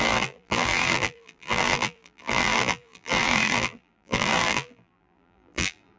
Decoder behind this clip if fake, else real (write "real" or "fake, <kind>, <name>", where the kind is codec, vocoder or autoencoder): fake, vocoder, BigVGAN v2